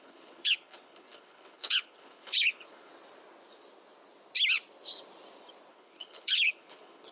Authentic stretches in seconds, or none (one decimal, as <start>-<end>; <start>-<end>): 2.9-5.7